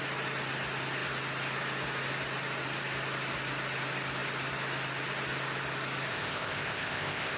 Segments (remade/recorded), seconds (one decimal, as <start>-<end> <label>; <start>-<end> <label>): 0.0-6.1 recorded; 6.1-7.4 remade